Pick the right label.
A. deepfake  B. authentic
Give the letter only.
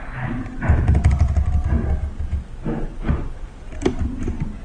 B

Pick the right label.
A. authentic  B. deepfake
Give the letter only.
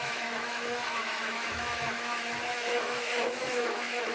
B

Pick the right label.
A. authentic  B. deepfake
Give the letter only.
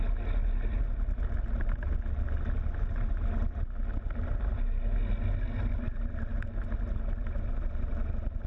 A